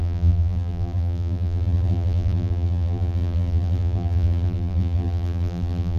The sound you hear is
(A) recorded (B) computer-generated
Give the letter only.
B